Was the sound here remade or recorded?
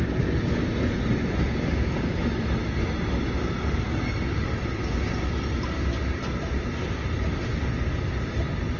recorded